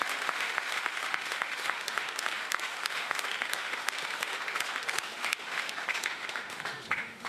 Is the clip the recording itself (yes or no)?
no